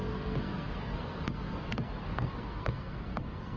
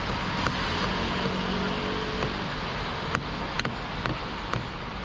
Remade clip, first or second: first